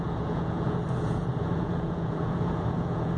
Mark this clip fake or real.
fake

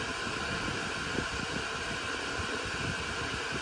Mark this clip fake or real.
real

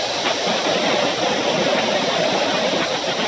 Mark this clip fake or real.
real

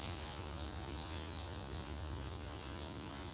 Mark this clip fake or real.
fake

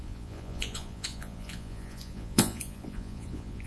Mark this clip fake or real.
fake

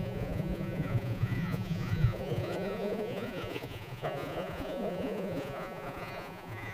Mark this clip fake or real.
fake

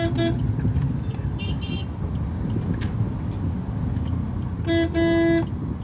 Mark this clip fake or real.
real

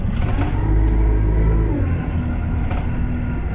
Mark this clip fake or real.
real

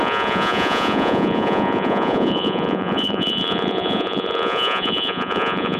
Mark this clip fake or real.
fake